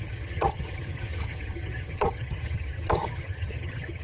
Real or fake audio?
fake